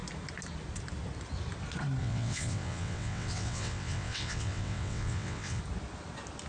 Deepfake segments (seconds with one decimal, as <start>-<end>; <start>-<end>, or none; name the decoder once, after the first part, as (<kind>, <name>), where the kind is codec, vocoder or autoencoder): 2.0-5.6 (vocoder, WaveNeXt)